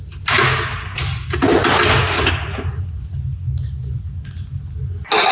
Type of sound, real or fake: real